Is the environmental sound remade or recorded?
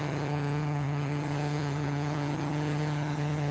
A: remade